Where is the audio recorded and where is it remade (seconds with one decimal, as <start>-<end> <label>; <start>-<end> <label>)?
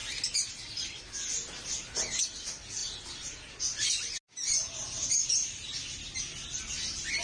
0.0-7.2 recorded